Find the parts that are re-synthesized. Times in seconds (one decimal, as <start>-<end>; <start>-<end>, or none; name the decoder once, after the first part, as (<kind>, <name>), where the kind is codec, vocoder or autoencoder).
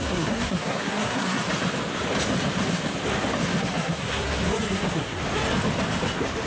0.0-1.4 (codec, SNAC); 3.6-5.2